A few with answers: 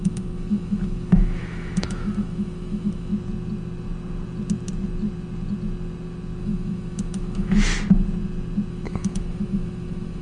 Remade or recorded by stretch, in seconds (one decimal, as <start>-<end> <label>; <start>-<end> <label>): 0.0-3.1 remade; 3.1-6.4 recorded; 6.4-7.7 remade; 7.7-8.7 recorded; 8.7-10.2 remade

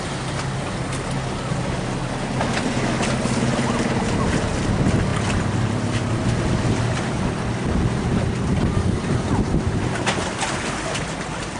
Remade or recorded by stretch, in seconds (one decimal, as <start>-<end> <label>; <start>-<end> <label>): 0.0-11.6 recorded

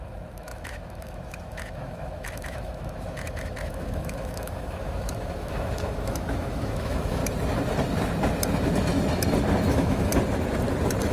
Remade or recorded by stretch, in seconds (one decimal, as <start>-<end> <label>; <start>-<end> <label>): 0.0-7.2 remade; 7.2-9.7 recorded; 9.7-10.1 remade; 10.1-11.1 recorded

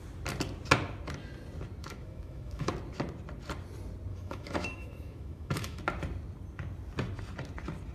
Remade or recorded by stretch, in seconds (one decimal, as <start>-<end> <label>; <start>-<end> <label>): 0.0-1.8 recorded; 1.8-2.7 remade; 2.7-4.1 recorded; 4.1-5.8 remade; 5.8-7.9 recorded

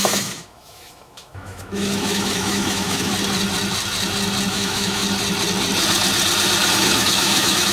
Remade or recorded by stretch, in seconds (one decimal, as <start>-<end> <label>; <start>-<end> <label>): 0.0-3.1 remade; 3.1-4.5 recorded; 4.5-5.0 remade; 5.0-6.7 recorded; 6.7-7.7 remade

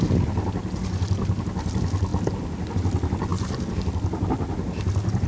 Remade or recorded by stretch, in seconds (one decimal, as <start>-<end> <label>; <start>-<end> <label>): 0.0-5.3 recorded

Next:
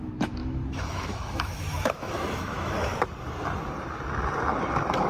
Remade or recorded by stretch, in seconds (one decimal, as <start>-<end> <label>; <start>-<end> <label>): 0.0-2.9 remade; 2.9-5.1 recorded